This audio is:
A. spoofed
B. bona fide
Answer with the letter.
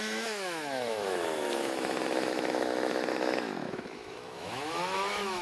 A